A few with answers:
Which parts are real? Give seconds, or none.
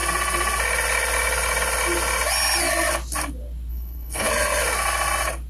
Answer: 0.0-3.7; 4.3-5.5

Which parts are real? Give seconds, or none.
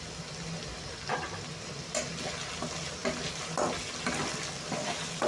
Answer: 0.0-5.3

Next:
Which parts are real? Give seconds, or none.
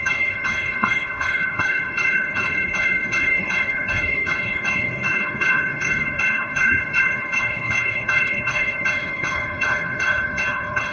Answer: none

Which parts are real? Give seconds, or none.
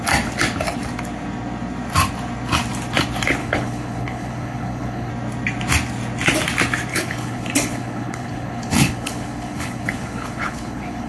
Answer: 0.0-3.4; 5.1-6.9